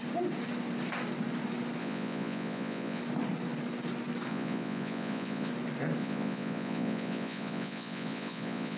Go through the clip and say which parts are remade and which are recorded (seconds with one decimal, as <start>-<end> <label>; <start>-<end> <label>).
0.0-1.8 recorded; 1.8-3.0 remade; 3.0-4.3 recorded; 4.3-5.5 remade; 5.5-6.0 recorded; 6.0-8.8 remade